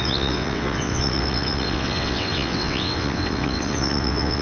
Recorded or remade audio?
remade